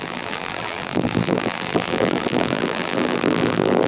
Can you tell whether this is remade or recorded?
remade